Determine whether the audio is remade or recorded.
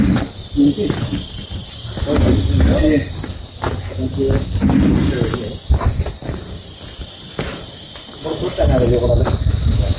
recorded